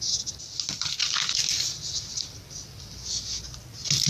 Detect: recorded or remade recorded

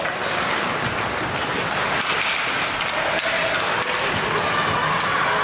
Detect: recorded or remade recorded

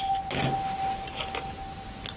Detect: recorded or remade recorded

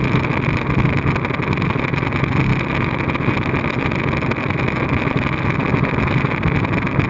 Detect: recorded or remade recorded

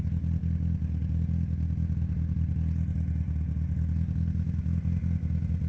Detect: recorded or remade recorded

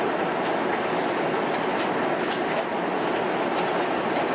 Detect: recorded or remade recorded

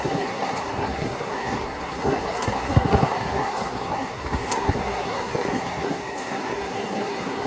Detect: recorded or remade remade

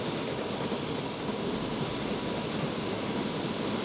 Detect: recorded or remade recorded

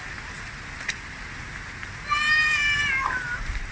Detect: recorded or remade recorded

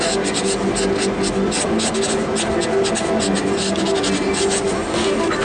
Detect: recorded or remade recorded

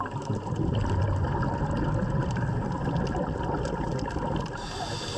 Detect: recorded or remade recorded